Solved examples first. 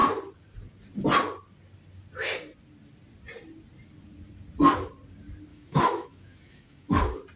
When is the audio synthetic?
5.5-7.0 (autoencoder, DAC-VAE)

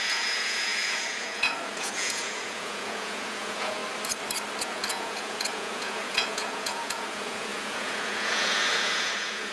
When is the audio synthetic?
0.0-3.8 (vocoder, Vocos); 4.6-9.5

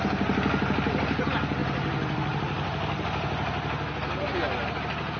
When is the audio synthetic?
none

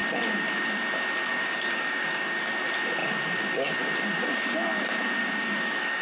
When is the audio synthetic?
1.3-2.6 (codec, DAC); 5.2-6.0

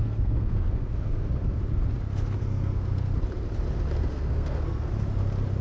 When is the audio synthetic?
0.0-1.6 (codec, SNAC); 2.4-3.2; 4.1-4.9

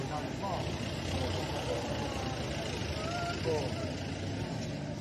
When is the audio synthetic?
none

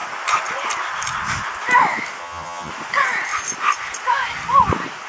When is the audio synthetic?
2.2-2.7 (vocoder, HiFi-GAN)